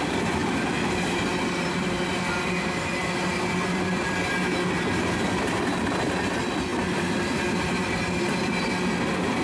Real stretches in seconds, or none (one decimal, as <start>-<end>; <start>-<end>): 0.0-9.4